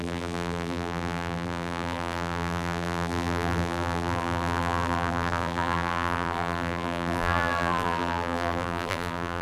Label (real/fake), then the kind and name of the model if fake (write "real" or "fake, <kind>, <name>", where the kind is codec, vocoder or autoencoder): fake, vocoder, BigVGAN v2